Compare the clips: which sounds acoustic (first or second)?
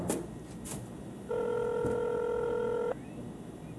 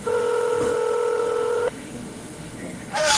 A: first